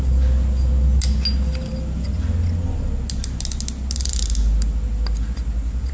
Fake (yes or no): no